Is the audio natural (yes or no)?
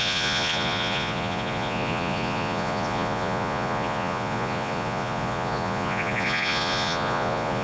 no